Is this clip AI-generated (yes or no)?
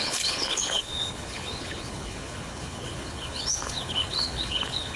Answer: yes